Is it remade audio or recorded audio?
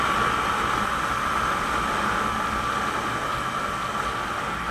recorded